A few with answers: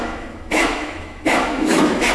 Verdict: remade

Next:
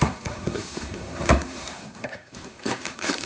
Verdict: remade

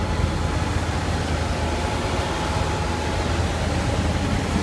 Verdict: recorded